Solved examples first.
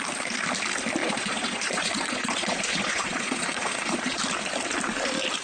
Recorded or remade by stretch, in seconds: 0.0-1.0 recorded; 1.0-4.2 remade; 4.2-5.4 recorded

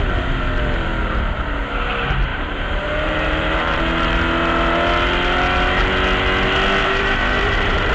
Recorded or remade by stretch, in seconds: 0.0-2.3 recorded; 2.3-3.8 remade; 3.8-6.8 recorded; 6.8-7.9 remade

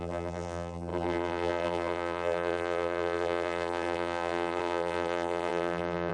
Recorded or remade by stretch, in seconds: 0.0-6.1 remade

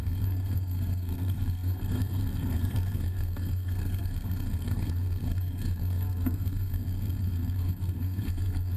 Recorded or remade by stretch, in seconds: 0.0-8.8 remade